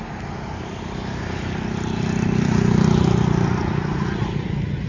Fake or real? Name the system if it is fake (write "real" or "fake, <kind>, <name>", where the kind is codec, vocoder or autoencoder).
real